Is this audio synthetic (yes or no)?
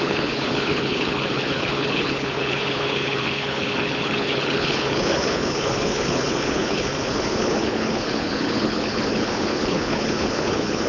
yes